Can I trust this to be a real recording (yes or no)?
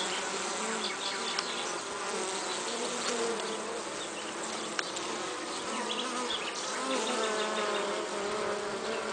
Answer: yes